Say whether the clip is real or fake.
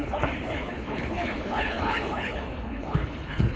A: fake